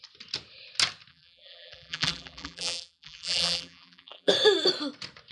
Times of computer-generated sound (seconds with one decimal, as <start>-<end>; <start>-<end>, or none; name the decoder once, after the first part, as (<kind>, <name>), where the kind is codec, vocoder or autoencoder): 1.1-4.3 (vocoder, BigVGAN v2)